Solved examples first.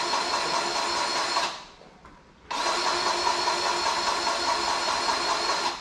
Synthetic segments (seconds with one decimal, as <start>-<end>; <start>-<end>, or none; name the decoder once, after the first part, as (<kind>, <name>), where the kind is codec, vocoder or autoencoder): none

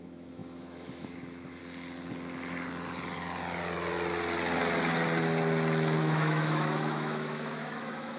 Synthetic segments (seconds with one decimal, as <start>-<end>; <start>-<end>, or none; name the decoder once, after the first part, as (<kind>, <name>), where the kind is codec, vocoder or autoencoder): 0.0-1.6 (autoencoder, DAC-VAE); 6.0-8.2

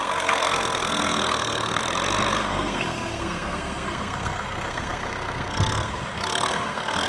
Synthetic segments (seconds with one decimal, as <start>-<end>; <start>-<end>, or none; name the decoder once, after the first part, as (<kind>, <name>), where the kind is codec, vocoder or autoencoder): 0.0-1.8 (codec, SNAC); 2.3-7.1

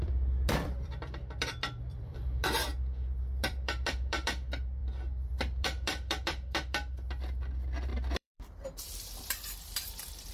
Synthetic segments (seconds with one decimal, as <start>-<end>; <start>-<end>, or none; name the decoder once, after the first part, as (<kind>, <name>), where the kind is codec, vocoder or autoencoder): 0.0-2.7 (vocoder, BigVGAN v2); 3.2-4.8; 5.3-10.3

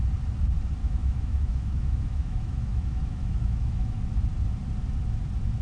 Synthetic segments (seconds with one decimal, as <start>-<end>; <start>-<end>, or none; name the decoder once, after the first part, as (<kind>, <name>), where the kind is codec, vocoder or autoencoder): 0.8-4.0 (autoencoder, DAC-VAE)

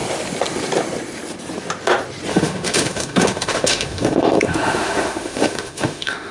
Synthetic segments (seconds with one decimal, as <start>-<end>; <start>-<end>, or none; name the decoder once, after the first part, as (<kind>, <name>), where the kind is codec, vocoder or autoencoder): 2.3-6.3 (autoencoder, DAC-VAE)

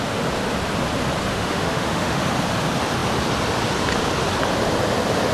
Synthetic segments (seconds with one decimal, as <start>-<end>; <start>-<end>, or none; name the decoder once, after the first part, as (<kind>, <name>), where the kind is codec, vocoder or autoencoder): 1.3-2.2 (autoencoder, DAC-VAE)